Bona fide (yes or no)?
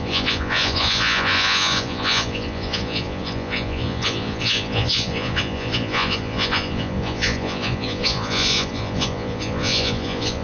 no